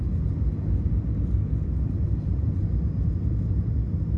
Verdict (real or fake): real